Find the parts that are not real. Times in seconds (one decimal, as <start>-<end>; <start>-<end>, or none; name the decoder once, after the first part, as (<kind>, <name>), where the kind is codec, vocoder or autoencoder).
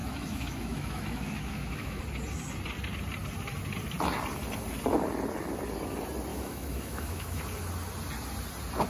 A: 0.0-2.0 (autoencoder, DAC-VAE); 6.3-7.4